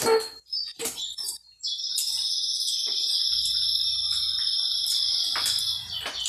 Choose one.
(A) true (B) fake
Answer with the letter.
A